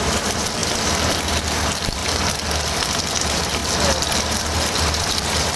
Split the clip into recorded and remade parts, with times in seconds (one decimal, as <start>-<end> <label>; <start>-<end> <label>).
0.0-2.0 remade; 2.0-3.2 recorded; 3.2-3.6 remade; 3.6-4.9 recorded; 4.9-5.6 remade